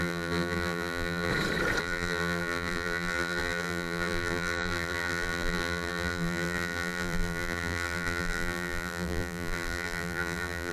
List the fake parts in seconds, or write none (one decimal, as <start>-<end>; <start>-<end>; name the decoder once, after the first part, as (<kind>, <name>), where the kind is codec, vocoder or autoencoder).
0.0-1.3 (vocoder, BigVGAN v2); 1.8-10.7